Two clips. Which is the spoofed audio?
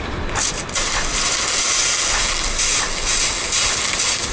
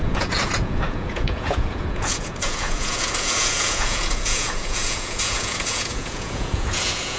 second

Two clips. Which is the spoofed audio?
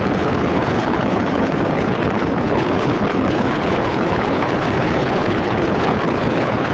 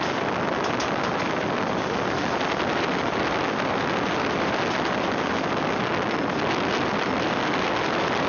first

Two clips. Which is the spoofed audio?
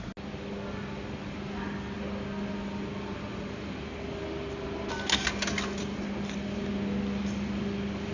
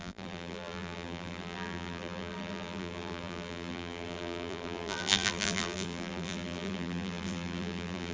second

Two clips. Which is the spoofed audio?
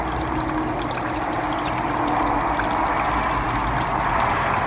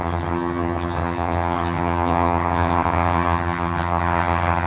second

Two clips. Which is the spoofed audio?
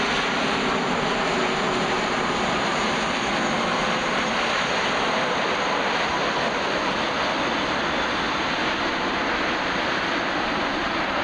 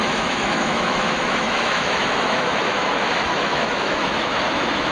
second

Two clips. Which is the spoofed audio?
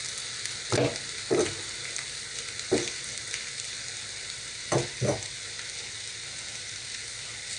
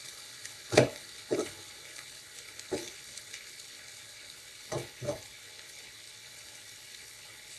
second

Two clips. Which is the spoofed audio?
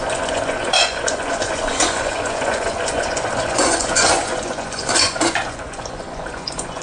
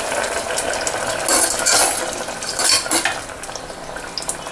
first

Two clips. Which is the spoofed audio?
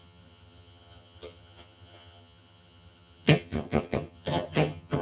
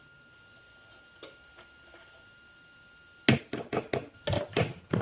first